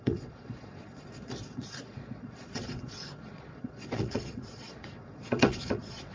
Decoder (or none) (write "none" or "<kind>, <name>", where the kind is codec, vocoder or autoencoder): vocoder, Vocos